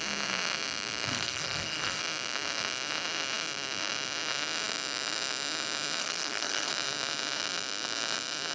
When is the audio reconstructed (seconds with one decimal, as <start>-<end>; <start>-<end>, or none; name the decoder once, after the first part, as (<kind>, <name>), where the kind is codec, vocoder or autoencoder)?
1.1-2.0 (codec, SNAC); 6.0-6.7